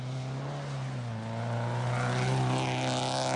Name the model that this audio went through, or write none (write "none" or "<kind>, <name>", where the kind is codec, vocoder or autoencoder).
none